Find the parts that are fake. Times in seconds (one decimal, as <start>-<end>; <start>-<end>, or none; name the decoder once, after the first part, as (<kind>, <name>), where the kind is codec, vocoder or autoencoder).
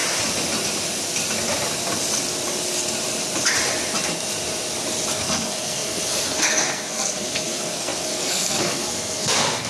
5.1-9.7 (codec, SNAC)